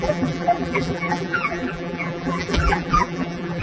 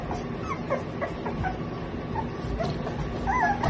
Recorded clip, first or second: second